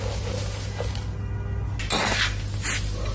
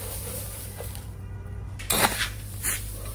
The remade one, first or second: second